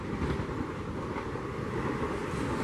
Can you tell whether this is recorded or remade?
recorded